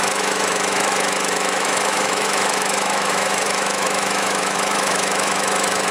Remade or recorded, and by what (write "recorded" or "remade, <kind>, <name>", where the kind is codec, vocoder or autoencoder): remade, autoencoder, DAC-VAE